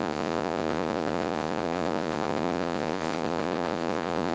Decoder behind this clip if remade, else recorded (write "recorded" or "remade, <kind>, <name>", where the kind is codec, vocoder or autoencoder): remade, vocoder, Vocos